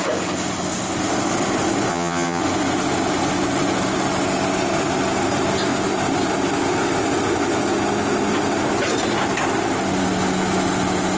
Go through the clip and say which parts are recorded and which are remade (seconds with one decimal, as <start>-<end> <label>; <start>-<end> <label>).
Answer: 0.0-1.9 recorded; 1.9-2.4 remade; 2.4-11.2 recorded